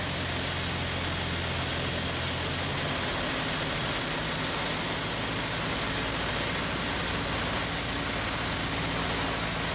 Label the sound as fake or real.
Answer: real